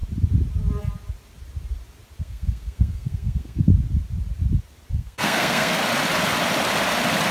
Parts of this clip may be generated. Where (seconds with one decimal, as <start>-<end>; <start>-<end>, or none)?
2.2-3.7; 4.9-5.8